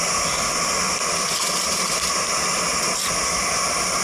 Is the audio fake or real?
real